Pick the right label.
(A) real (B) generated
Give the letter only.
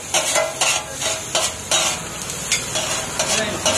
A